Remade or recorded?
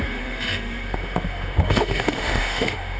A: remade